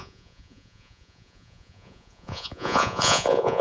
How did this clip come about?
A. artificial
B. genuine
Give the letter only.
A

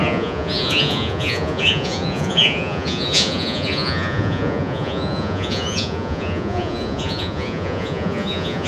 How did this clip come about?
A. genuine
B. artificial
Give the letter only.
B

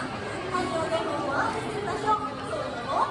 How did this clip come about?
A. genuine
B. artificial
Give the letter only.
A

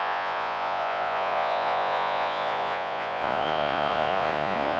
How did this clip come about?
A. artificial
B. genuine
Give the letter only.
A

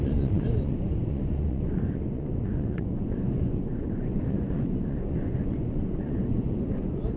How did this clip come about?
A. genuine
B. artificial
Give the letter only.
B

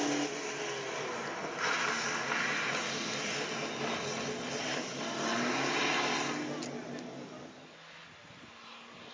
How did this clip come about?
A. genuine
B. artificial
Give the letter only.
A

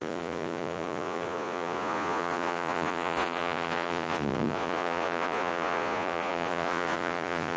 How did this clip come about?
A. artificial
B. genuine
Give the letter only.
A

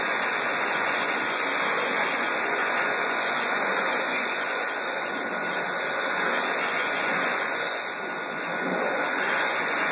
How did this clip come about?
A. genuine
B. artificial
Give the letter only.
B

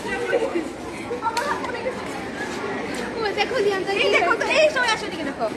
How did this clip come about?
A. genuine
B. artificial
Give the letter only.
A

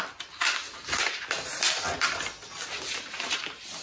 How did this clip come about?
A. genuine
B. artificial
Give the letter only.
A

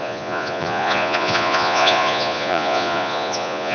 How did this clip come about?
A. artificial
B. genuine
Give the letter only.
A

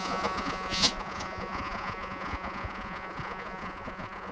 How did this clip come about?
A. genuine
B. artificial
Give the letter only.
B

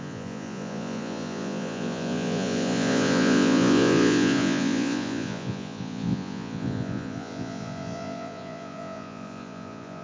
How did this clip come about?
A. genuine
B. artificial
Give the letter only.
B